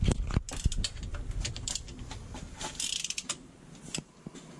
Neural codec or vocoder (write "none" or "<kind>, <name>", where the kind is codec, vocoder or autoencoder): none